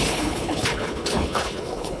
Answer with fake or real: fake